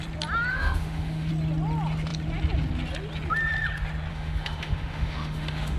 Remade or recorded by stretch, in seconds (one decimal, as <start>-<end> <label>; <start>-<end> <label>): 0.0-0.5 recorded; 0.5-1.3 remade; 1.3-4.1 recorded; 4.1-5.8 remade